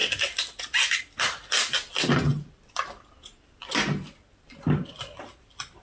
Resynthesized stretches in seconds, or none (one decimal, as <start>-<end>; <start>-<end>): none